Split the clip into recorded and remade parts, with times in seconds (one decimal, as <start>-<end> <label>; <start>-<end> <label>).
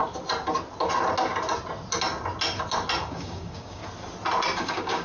0.0-3.0 recorded; 3.0-3.8 remade; 3.8-4.6 recorded; 4.6-5.0 remade